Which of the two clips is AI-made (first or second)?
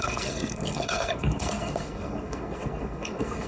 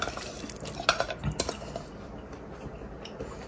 first